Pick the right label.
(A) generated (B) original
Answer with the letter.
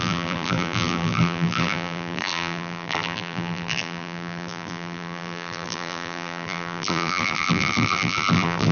A